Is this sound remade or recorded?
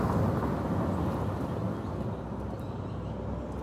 recorded